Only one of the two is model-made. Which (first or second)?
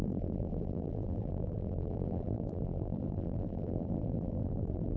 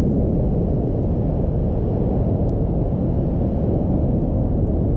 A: first